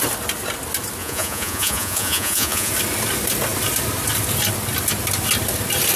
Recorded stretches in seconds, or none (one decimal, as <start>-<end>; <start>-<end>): 0.0-1.0; 2.7-6.0